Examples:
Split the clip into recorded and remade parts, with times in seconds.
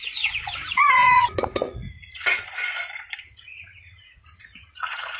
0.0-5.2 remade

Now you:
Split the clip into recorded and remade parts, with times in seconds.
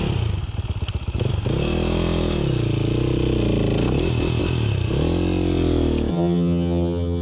0.0-6.1 recorded; 6.1-7.2 remade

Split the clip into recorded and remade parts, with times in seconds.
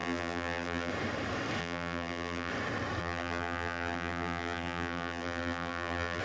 0.0-0.9 remade; 0.9-1.6 recorded; 1.6-2.5 remade; 2.5-3.0 recorded; 3.0-6.2 remade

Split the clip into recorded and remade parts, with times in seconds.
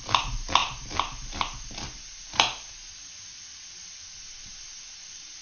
0.0-5.4 recorded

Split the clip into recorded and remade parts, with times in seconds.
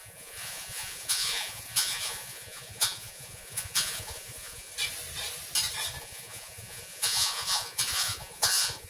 0.0-4.7 remade; 4.7-6.0 recorded; 6.0-8.9 remade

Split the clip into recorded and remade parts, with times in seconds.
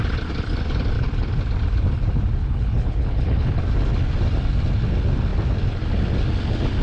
0.0-2.4 recorded; 2.4-3.6 remade; 3.6-6.8 recorded